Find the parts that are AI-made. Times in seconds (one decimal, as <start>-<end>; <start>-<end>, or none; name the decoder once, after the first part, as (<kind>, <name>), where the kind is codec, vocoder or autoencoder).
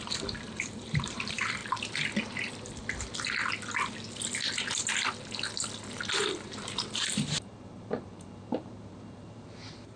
0.0-1.6 (vocoder, BigVGAN v2); 6.1-10.0